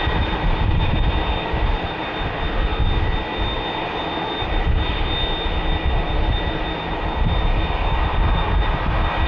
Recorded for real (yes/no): yes